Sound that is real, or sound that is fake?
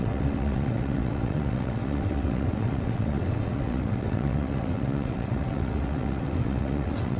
fake